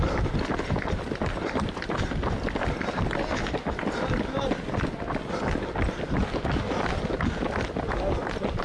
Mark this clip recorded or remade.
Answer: recorded